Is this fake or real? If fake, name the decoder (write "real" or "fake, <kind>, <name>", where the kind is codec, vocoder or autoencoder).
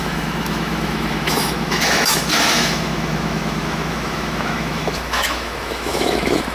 fake, autoencoder, DAC-VAE